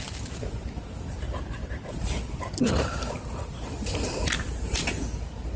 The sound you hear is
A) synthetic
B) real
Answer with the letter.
B